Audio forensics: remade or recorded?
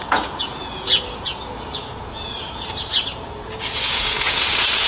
remade